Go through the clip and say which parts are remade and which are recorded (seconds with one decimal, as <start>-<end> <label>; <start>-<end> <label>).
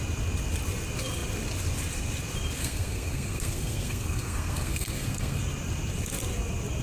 0.0-2.6 recorded; 2.6-5.4 remade; 5.4-6.8 recorded